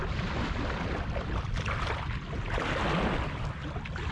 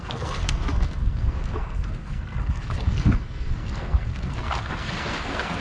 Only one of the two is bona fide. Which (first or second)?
first